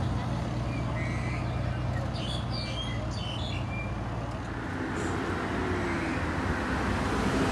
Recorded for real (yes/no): yes